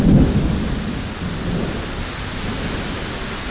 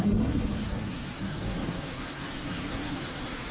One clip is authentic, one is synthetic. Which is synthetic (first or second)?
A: second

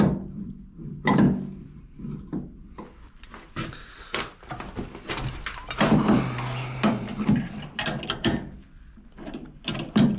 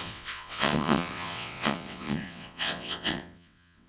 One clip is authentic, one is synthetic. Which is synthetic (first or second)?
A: second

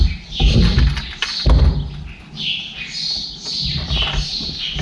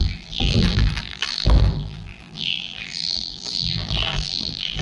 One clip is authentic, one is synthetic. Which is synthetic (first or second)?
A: second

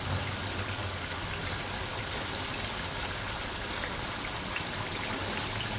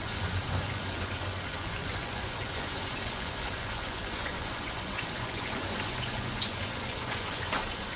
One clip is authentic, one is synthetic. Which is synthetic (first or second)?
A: second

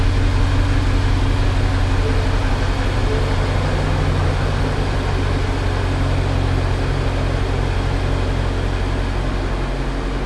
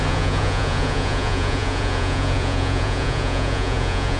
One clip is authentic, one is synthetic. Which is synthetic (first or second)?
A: second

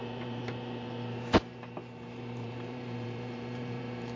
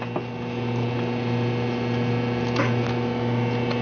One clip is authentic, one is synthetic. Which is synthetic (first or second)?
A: first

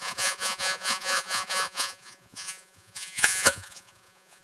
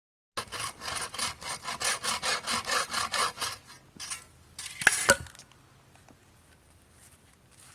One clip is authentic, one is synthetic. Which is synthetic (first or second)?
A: first